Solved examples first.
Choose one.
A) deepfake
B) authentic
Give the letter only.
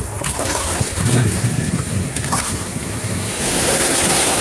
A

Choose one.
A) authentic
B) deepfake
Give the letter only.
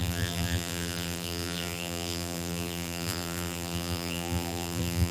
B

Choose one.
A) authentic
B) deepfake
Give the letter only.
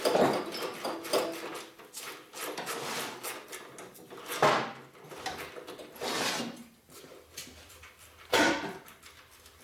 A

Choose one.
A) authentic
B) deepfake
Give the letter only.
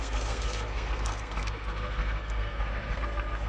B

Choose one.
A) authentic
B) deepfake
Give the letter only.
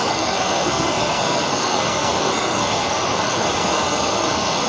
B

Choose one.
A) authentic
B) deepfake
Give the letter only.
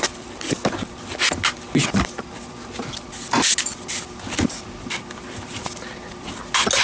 A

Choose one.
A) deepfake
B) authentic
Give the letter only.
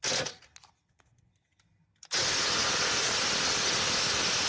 B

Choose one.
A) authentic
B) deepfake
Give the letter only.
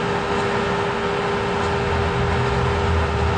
A